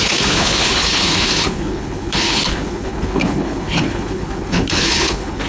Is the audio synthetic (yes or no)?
yes